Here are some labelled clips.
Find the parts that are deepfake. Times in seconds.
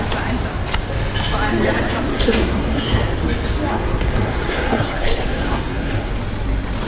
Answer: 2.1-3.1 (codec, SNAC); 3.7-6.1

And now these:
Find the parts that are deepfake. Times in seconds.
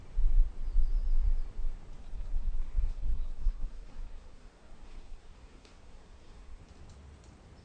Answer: 2.0-6.6 (codec, SNAC)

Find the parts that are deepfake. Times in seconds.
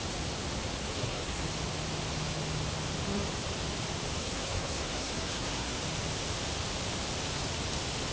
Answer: 0.8-1.5 (codec, SNAC); 4.2-5.8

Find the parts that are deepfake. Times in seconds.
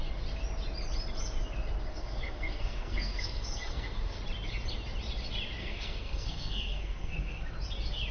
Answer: 1.9-4.2 (codec, SNAC); 5.6-7.5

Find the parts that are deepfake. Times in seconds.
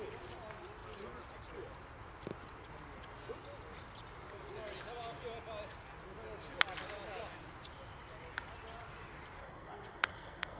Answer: 9.4-10.6 (codec, SNAC)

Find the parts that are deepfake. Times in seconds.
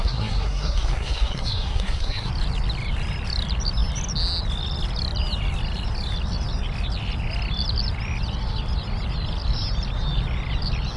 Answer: 0.0-2.3 (codec, SNAC)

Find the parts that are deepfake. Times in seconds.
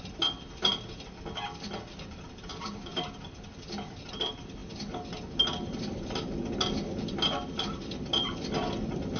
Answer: none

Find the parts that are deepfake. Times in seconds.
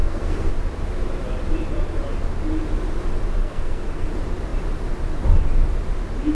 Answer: 0.0-0.5 (codec, SNAC); 3.4-4.1